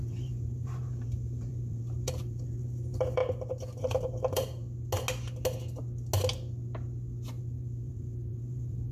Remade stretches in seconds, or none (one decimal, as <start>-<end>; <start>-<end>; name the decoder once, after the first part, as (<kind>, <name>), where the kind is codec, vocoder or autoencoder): 0.0-3.2 (vocoder, BigVGAN v2); 3.8-4.6; 7.4-8.9